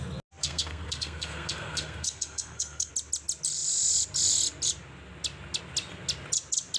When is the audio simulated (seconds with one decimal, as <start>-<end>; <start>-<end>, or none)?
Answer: 0.4-2.9